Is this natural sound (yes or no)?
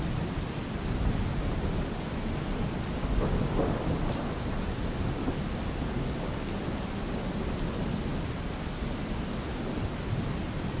yes